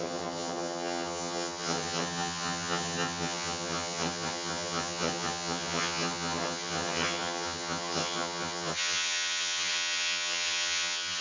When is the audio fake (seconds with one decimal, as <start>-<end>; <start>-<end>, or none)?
0.0-11.2